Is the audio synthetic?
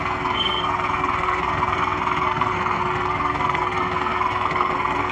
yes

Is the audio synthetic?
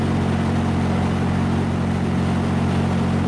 no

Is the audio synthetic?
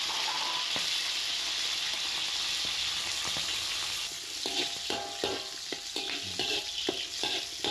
no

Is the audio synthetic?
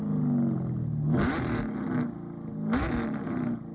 no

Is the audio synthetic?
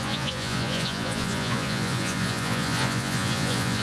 yes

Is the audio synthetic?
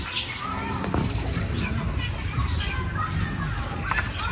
no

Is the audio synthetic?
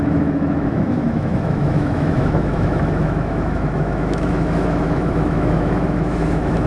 yes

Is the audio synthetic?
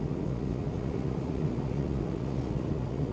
yes